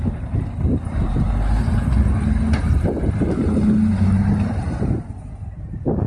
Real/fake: real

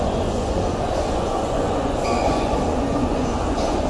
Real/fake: fake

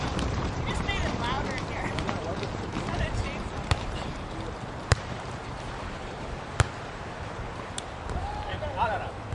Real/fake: fake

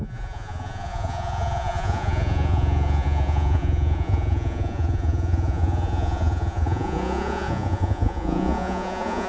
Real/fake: fake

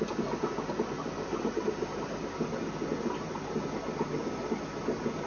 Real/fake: real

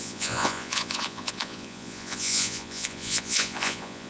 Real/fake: fake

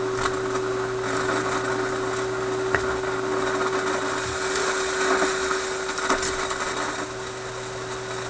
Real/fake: real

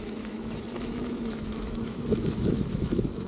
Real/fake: fake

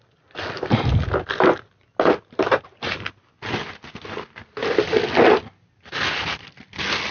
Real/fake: real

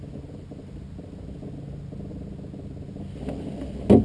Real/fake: real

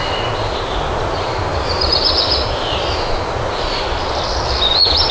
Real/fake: real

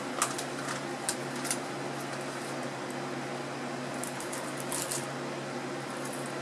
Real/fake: real